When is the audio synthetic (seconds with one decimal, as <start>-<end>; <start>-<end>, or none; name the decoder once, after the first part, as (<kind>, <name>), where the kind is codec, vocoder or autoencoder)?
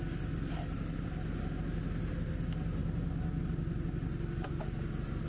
none